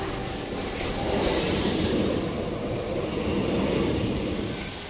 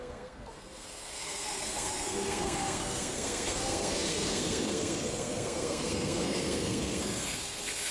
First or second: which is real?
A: first